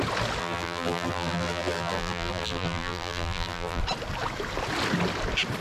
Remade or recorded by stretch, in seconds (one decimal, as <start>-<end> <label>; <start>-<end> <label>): 0.0-0.4 recorded; 0.4-3.8 remade; 3.8-5.6 recorded